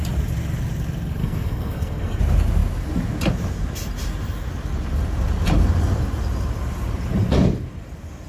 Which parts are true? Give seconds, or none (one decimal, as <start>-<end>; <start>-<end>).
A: 0.0-1.2; 2.2-8.3

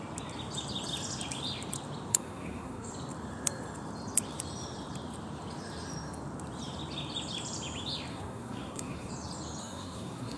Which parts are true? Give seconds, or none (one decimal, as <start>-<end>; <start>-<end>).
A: 0.0-2.1; 2.9-8.1; 9.1-9.6

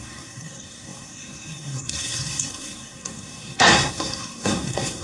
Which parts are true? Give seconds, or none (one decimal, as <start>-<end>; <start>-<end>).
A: none

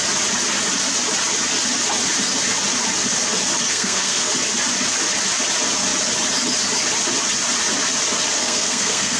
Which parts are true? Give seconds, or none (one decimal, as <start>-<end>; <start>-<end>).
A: 0.0-3.7; 4.3-8.4